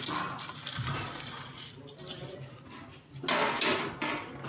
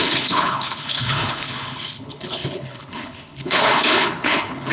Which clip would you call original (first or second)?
first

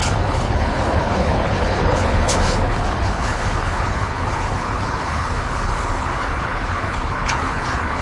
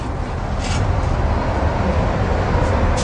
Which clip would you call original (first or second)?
second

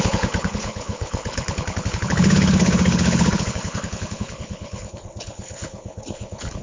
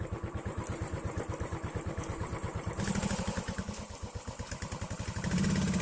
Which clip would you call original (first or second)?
second